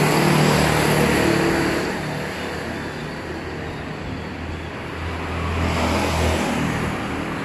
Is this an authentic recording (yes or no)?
yes